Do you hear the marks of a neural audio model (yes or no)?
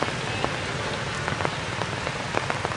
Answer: no